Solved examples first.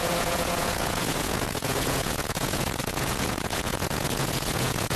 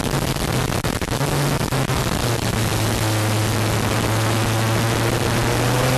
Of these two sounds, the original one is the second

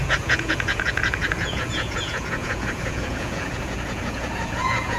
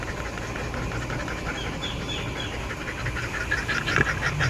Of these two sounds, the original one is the second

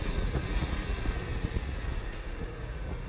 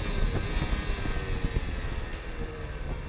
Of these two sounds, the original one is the second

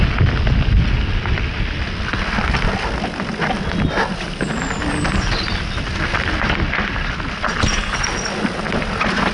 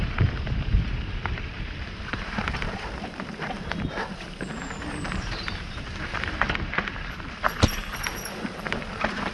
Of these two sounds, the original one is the first